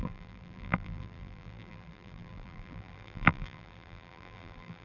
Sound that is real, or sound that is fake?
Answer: fake